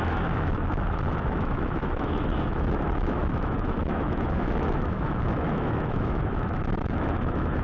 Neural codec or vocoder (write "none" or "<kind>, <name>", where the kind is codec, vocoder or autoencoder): autoencoder, DAC-VAE